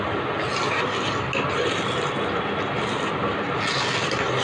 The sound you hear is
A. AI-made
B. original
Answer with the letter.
B